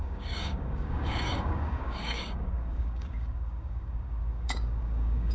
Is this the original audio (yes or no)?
no